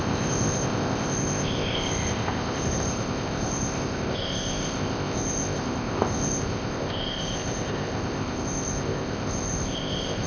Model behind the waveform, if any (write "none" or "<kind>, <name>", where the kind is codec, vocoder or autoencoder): codec, ZipCodec